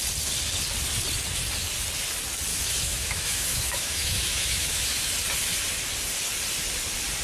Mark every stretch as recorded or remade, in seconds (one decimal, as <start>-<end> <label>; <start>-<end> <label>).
0.0-2.5 recorded; 2.5-5.0 remade; 5.0-7.2 recorded